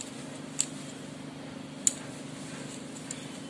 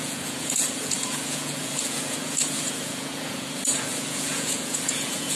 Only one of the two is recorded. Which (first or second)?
first